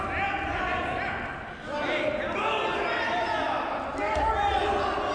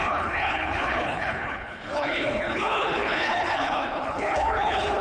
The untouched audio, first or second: first